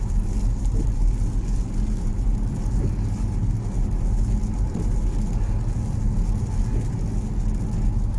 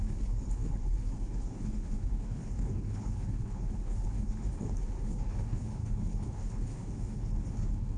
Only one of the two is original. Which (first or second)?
first